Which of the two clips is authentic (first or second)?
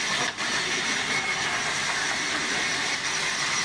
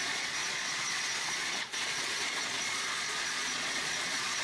first